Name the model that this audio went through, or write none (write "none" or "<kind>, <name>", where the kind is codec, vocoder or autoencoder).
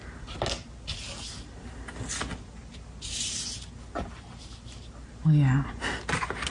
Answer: none